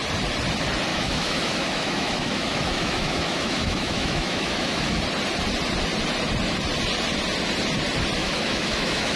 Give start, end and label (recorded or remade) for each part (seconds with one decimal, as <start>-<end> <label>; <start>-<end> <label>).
0.0-0.9 recorded; 0.9-5.0 remade; 5.0-8.2 recorded; 8.2-9.2 remade